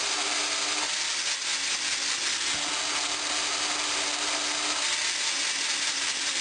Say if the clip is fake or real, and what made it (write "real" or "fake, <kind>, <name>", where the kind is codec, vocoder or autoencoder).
real